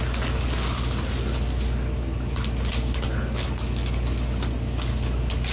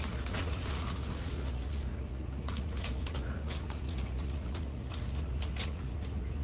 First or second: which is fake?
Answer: second